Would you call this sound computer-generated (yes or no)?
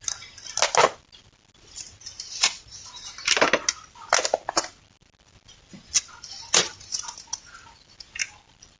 no